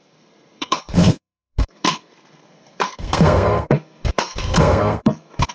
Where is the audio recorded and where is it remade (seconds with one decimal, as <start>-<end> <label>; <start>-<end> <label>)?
0.0-5.5 remade